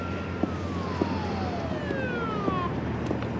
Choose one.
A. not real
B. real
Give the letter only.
B